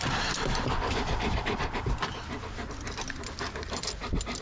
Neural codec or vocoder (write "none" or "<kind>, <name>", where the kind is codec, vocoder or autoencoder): none